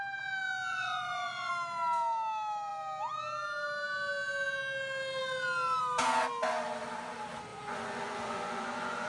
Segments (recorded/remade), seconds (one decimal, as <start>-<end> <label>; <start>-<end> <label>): 0.0-0.7 recorded; 0.7-1.5 remade; 1.5-7.5 recorded; 7.5-9.1 remade